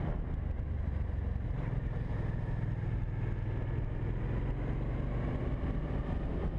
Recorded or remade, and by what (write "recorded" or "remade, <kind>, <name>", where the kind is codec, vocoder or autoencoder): recorded